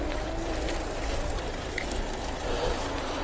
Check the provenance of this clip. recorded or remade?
recorded